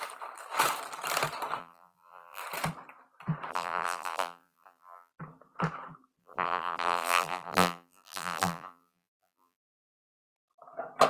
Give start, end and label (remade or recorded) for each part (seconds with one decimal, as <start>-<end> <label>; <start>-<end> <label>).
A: 0.0-1.6 recorded; 1.6-2.4 remade; 2.4-3.5 recorded; 3.5-5.1 remade; 5.1-6.2 recorded; 6.2-9.7 remade; 9.7-11.1 recorded